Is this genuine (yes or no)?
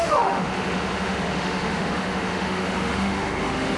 no